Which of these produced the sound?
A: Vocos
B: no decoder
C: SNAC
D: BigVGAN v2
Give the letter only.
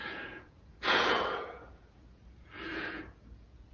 A